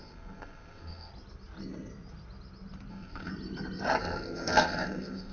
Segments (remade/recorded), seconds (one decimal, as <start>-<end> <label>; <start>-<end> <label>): 0.0-1.1 remade; 1.1-2.9 recorded; 2.9-3.3 remade; 3.3-4.0 recorded; 4.0-5.3 remade